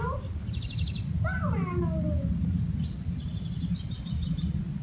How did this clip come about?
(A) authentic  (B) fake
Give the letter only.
A